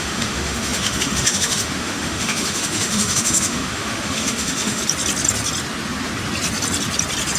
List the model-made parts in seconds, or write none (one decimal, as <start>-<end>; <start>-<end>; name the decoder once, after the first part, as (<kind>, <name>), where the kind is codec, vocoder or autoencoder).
0.0-4.8 (autoencoder, DAC-VAE)